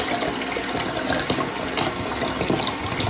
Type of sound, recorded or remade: recorded